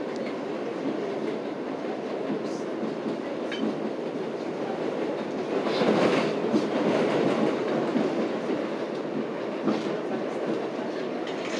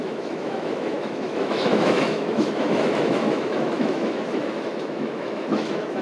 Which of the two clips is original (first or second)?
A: first